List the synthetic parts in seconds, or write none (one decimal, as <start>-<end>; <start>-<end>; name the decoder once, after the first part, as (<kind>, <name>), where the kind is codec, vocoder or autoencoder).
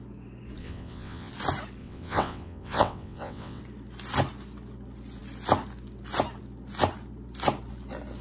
0.6-1.3 (vocoder, WaveNeXt); 1.8-3.6